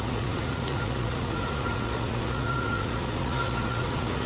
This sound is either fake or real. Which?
fake